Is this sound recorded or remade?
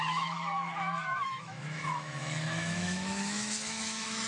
remade